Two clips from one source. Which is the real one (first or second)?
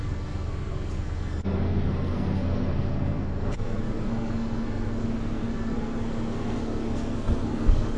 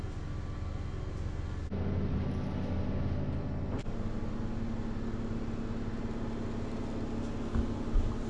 second